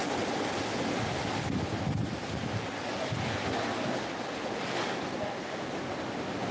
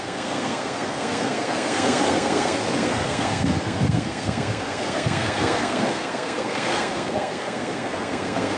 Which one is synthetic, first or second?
second